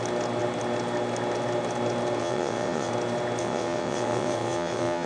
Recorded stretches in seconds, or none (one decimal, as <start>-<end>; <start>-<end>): 0.0-2.2; 2.9-3.4